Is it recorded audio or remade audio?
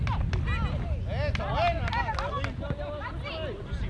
recorded